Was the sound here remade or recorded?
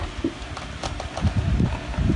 recorded